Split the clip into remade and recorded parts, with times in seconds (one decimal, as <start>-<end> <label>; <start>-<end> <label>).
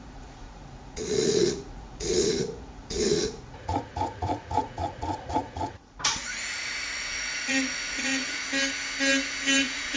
0.0-8.4 remade; 8.4-9.6 recorded; 9.6-10.0 remade